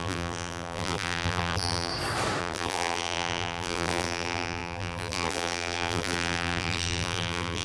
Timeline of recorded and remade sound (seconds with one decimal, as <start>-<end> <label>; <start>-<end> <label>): 0.0-1.9 remade; 1.9-2.4 recorded; 2.4-7.6 remade